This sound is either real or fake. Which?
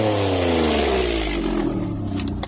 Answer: real